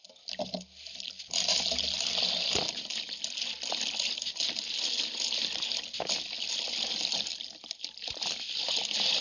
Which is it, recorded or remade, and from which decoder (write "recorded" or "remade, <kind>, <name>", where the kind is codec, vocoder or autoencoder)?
recorded